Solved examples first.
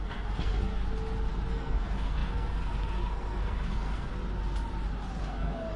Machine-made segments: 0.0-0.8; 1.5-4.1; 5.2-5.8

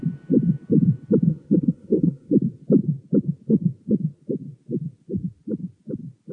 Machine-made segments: 1.3-2.3

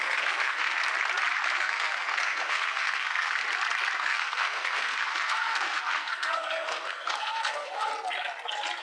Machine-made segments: 0.0-0.8; 1.5-3.4; 4.0-7.9